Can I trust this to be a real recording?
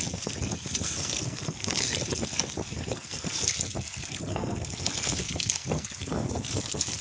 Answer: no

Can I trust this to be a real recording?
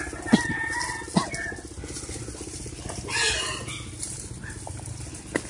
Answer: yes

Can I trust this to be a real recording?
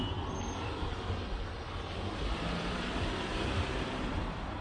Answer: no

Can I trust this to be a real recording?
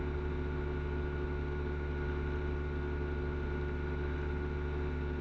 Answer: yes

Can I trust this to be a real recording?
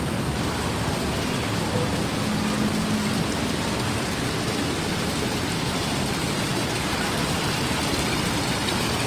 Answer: yes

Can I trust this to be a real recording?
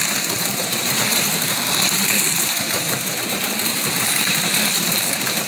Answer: no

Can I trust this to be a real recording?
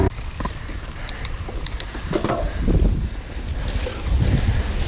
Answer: yes